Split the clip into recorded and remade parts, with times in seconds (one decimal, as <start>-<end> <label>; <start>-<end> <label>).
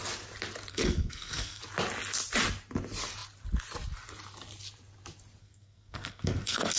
0.0-0.7 recorded; 0.7-1.6 remade; 1.6-5.4 recorded; 5.4-6.8 remade